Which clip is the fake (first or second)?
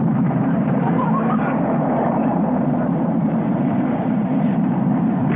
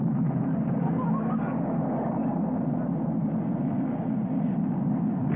first